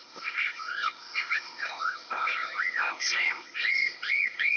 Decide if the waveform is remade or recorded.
remade